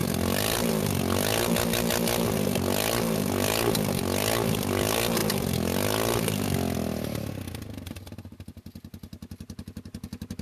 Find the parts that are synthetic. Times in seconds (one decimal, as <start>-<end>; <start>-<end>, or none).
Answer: none